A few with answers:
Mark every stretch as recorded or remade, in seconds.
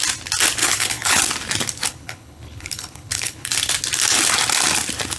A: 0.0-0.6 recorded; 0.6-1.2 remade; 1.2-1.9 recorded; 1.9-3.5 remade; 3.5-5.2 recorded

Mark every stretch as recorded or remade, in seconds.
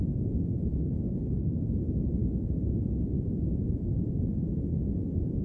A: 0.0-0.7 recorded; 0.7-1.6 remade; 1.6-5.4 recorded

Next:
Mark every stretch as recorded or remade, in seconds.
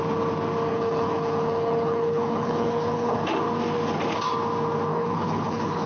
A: 0.0-0.7 recorded; 0.7-3.3 remade; 3.3-4.9 recorded; 4.9-5.9 remade